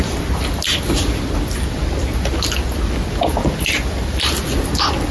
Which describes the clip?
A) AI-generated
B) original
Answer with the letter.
B